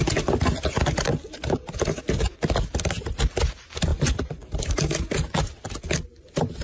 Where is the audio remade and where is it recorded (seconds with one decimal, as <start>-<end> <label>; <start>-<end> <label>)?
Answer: 0.0-6.6 recorded